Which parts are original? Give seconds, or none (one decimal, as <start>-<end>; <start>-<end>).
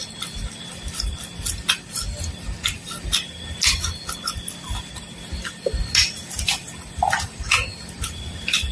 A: 0.0-0.4; 2.9-8.7